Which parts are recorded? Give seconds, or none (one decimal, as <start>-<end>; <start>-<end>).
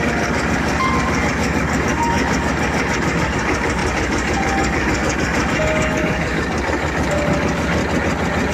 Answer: 7.8-8.5